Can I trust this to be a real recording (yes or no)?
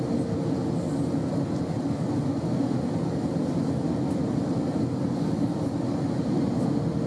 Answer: yes